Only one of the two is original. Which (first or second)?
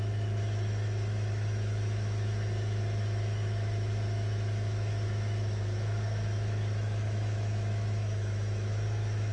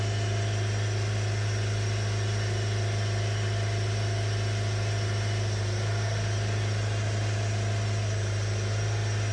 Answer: second